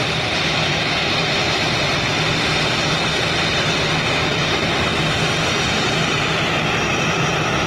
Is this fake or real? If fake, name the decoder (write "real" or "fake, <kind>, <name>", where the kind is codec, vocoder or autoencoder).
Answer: real